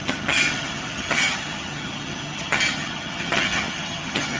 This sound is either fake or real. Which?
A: fake